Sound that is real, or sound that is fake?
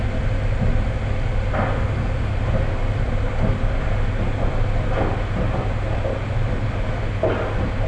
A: real